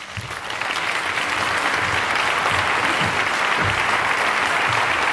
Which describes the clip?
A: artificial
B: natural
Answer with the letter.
B